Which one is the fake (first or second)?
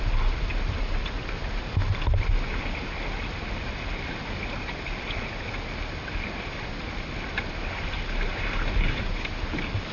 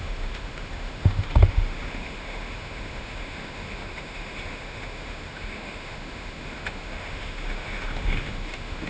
second